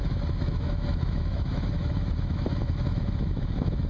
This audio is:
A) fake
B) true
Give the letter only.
A